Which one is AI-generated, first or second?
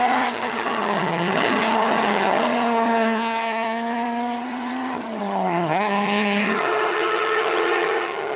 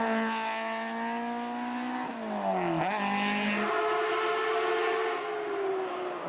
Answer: first